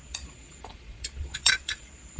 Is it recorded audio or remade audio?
remade